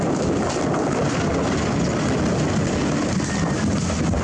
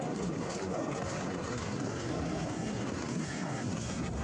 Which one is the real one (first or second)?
first